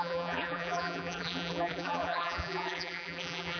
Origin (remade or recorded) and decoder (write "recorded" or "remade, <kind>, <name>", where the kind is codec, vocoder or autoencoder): remade, vocoder, BigVGAN v2